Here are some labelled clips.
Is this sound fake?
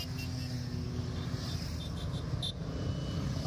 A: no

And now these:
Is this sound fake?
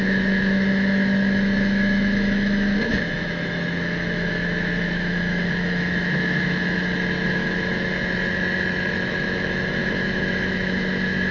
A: yes